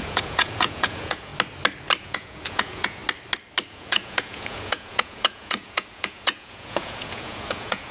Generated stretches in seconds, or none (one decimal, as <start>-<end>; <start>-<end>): 0.0-1.3; 2.0-3.0; 3.7-7.9